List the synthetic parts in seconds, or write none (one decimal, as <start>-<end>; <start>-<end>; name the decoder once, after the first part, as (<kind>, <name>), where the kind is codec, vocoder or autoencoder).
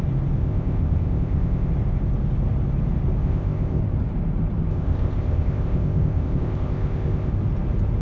0.4-1.7 (codec, ZipCodec); 3.2-3.8; 4.7-7.3